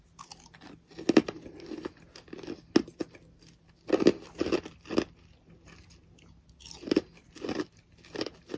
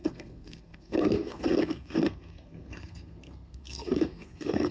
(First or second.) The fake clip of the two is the second